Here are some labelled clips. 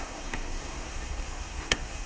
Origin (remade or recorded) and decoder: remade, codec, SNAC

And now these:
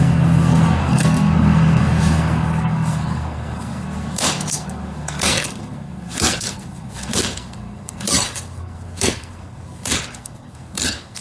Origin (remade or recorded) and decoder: remade, codec, SNAC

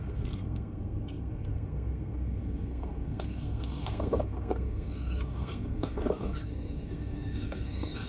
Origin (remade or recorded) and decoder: remade, codec, SNAC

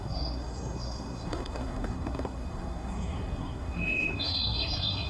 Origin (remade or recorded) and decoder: remade, codec, SNAC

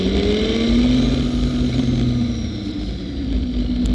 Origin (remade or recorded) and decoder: recorded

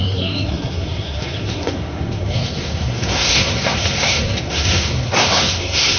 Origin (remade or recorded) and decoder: remade, codec, SNAC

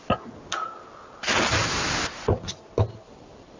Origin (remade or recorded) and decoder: recorded